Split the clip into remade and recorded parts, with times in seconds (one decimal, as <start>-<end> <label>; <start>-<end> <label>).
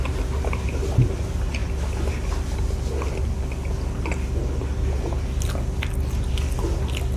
0.0-7.2 recorded